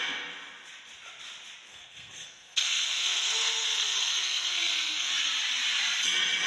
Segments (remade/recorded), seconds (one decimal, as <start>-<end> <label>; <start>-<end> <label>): 0.0-1.7 recorded; 1.7-5.1 remade; 5.1-6.5 recorded